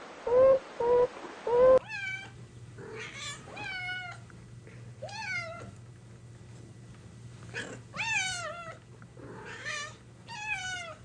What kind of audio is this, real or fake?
real